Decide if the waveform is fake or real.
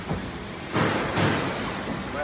real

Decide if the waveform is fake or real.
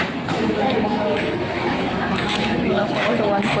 fake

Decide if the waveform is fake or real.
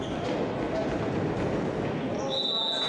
real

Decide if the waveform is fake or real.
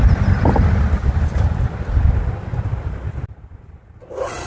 real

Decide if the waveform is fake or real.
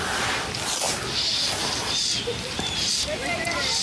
fake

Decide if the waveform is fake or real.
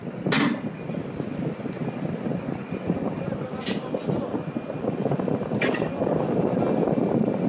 real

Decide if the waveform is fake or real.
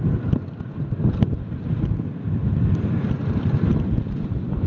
real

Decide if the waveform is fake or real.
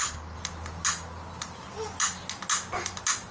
real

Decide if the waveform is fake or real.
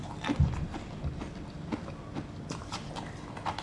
real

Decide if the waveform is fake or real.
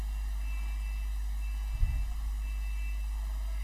real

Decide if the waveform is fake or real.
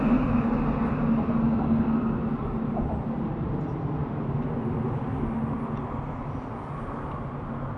real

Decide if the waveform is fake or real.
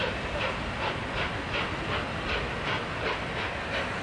real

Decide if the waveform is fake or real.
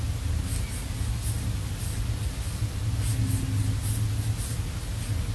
real